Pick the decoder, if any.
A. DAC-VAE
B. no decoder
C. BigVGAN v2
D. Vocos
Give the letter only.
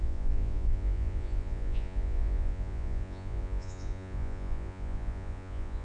D